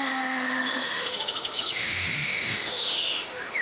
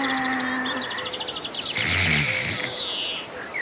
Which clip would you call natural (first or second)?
second